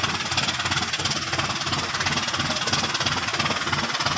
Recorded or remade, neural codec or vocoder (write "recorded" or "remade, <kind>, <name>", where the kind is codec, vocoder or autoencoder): recorded